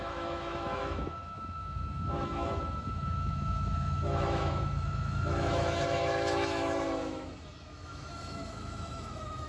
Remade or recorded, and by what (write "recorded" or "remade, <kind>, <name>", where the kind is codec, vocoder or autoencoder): remade, autoencoder, DAC-VAE